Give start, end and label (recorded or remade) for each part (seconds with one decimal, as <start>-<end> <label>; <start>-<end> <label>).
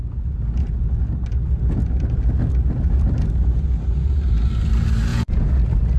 0.0-5.1 recorded; 5.1-5.6 remade; 5.6-6.0 recorded